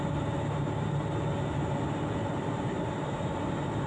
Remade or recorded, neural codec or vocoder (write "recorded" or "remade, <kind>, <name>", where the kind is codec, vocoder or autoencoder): recorded